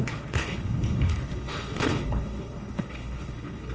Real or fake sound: fake